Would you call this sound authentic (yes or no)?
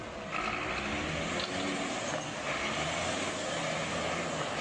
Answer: yes